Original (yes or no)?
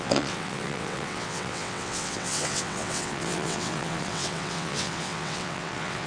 no